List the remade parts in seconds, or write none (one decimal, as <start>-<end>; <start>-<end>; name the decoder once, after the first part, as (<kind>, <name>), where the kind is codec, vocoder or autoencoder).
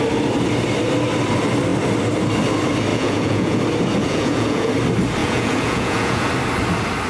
2.9-3.6 (vocoder, Vocos); 4.0-4.7; 5.2-6.3